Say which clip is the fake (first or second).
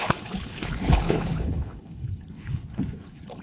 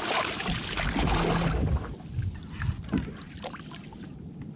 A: first